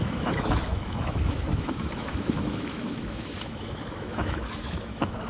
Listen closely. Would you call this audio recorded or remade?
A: remade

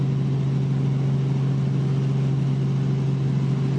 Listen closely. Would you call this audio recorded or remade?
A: recorded